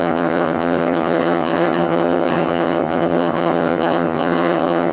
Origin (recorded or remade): remade